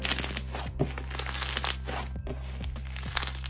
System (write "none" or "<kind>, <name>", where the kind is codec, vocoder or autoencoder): none